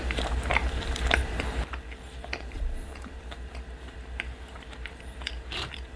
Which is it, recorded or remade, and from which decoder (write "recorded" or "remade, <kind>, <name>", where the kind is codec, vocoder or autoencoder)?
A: remade, vocoder, BigVGAN v2